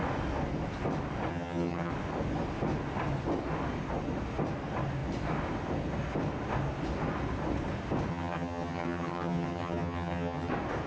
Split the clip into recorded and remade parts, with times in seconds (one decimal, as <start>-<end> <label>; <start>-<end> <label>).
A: 0.0-1.3 recorded; 1.3-1.9 remade; 1.9-8.1 recorded; 8.1-10.5 remade; 10.5-10.9 recorded